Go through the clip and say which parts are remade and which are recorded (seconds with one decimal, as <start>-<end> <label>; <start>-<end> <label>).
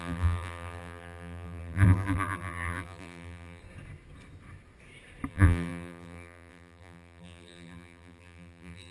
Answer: 0.0-3.6 remade; 3.6-5.3 recorded; 5.3-8.9 remade